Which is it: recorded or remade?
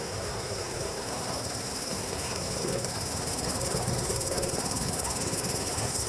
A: remade